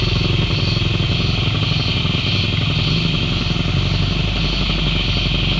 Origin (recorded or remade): recorded